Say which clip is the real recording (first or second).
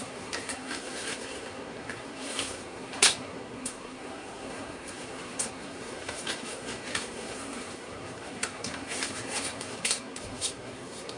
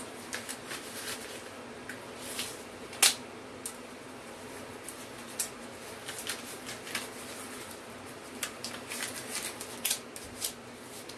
second